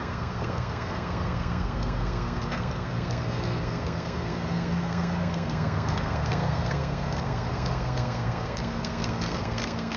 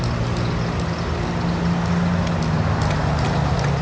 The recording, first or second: second